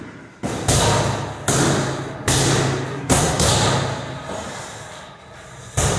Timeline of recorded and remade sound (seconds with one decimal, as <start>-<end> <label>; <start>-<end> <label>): 0.0-2.9 recorded; 2.9-3.5 remade; 3.5-6.0 recorded